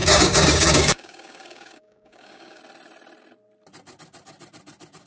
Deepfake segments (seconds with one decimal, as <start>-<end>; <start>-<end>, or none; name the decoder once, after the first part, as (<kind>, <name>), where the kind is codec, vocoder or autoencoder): 0.0-2.6 (codec, DAC)